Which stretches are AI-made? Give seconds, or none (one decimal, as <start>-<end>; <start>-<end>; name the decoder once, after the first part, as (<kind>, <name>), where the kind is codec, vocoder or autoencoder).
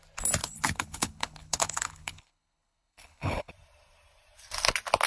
0.4-3.5 (codec, HILCodec)